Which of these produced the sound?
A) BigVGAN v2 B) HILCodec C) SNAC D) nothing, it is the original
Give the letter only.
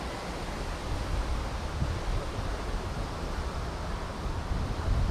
D